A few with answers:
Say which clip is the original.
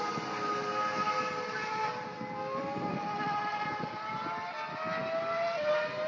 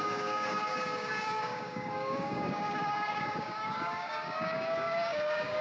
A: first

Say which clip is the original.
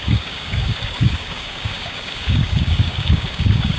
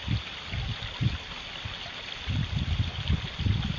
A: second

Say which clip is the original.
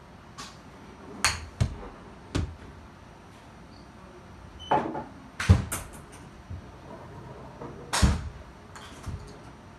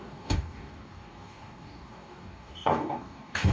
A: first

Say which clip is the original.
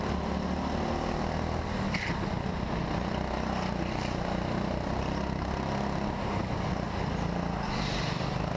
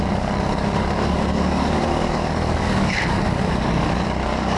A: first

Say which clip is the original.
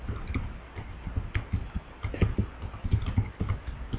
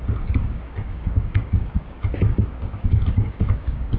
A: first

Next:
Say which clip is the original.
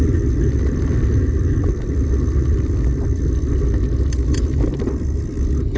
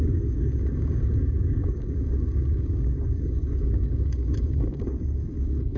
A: first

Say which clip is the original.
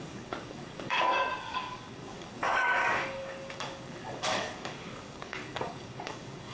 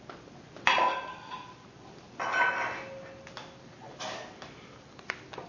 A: second